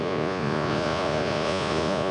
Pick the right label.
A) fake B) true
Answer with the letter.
A